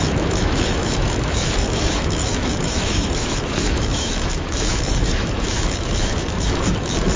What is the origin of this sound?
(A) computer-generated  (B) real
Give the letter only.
A